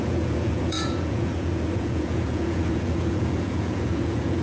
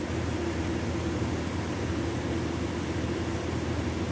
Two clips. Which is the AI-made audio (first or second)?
first